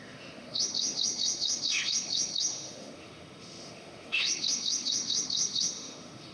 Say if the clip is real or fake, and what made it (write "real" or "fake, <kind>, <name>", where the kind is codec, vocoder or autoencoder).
fake, autoencoder, DAC-VAE